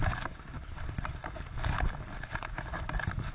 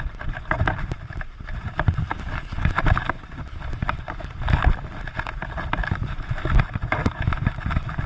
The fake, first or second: second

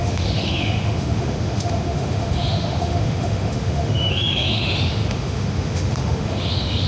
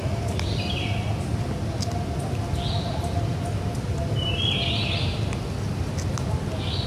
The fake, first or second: first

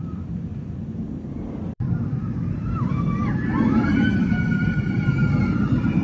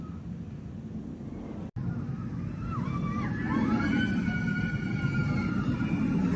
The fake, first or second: first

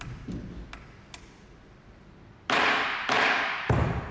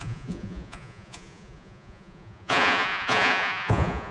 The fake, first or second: second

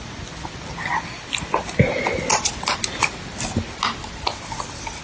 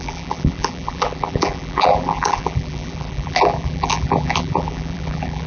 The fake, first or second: second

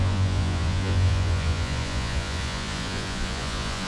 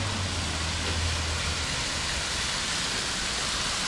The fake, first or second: first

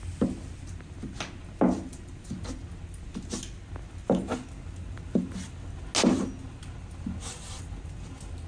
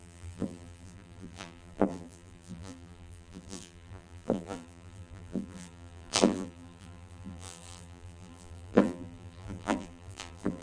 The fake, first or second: second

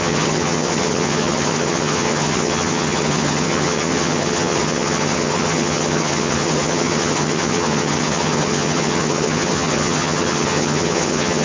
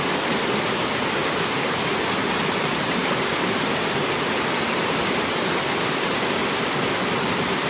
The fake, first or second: first